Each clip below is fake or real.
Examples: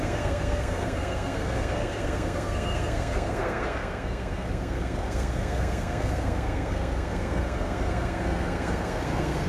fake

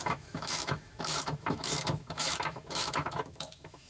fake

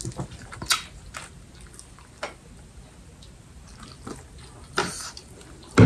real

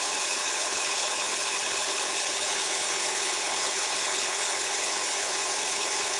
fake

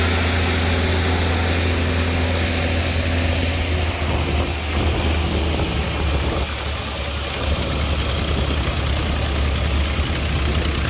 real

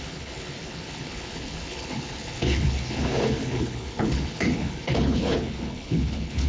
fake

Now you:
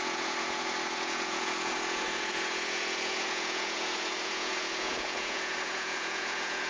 fake